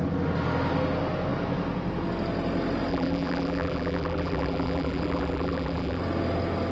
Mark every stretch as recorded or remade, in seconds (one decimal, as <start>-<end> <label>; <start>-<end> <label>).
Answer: 0.0-2.9 recorded; 2.9-6.0 remade; 6.0-6.7 recorded